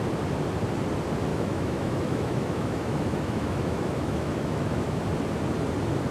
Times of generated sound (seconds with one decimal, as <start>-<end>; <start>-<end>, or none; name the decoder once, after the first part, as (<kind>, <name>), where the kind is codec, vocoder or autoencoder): 1.3-5.0 (autoencoder, DAC-VAE)